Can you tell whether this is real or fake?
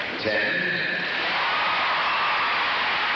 real